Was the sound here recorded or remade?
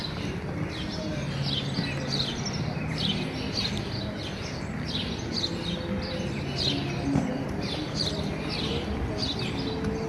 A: recorded